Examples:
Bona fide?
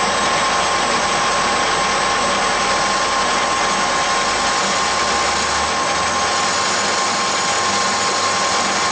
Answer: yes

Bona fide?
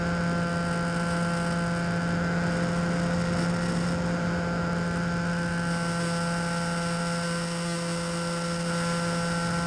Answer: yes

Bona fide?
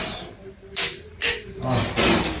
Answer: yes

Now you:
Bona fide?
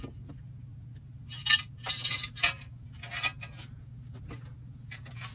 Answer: yes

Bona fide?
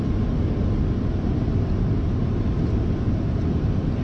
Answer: yes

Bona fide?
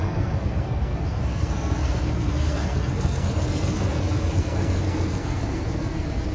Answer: no